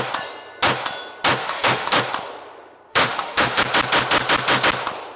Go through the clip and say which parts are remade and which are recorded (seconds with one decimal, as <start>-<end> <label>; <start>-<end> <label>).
0.0-1.4 recorded; 1.4-2.0 remade; 2.0-2.9 recorded; 2.9-3.6 remade; 3.6-5.2 recorded